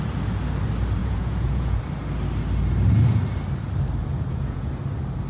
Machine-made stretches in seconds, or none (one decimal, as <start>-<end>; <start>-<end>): 1.0-1.8; 4.0-4.7